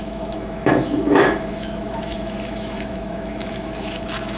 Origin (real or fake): fake